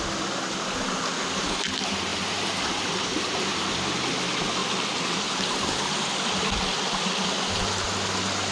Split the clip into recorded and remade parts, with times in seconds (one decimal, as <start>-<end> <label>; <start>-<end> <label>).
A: 0.0-2.1 recorded; 2.1-3.6 remade; 3.6-4.6 recorded; 4.6-7.6 remade; 7.6-8.5 recorded